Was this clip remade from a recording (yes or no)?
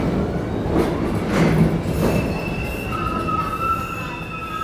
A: no